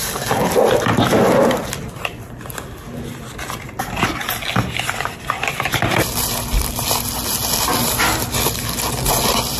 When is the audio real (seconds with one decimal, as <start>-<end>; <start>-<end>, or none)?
0.5-9.6